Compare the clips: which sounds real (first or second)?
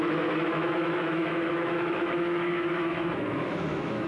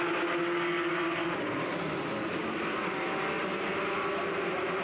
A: second